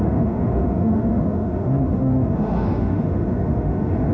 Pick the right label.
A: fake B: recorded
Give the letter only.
A